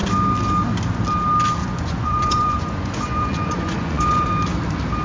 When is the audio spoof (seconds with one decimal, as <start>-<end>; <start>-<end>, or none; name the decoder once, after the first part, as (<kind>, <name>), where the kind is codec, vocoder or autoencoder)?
1.6-4.3 (vocoder, Vocos)